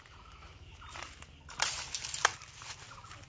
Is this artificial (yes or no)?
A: no